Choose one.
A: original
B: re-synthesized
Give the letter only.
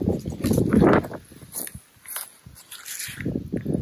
A